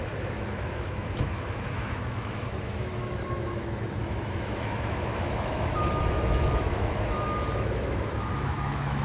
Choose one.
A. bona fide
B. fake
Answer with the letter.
B